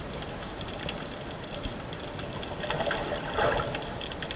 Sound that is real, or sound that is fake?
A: real